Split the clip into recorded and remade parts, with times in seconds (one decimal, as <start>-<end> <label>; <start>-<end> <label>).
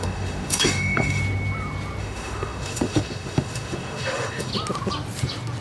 0.0-1.2 remade; 1.2-2.0 recorded; 2.0-4.5 remade; 4.5-5.6 recorded